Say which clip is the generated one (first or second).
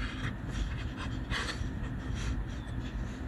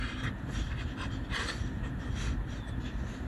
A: second